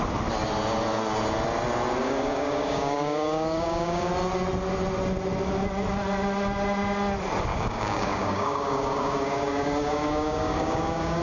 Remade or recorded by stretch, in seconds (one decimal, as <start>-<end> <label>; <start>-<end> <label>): 0.0-2.0 recorded; 2.0-4.1 remade; 4.1-7.5 recorded; 7.5-11.2 remade